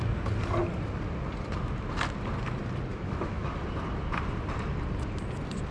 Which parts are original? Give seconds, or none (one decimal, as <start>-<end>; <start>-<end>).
0.0-2.9; 3.5-5.7